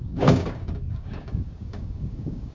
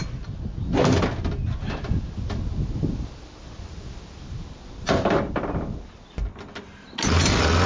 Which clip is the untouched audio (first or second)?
second